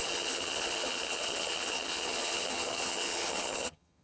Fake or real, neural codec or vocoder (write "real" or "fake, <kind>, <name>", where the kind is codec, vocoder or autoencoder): fake, vocoder, HiFi-GAN